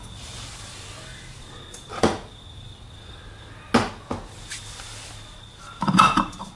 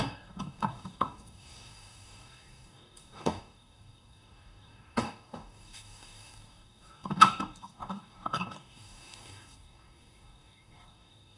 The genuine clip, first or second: first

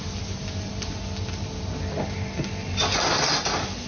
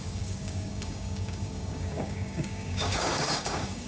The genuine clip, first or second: first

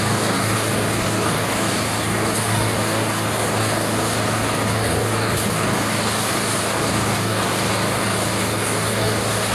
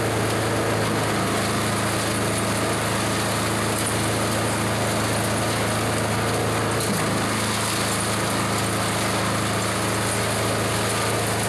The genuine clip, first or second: second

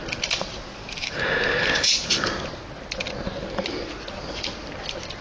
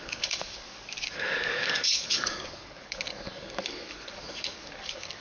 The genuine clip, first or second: first